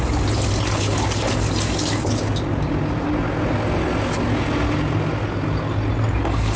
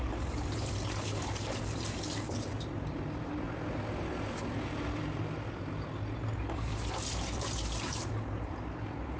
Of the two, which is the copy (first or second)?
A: second